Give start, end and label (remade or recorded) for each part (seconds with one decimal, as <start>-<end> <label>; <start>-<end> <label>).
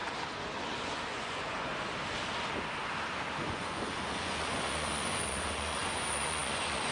0.0-0.6 recorded; 0.6-1.7 remade; 1.7-3.5 recorded; 3.5-6.9 remade